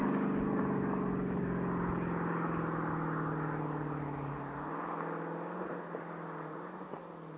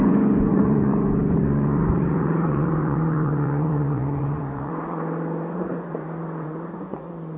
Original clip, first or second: first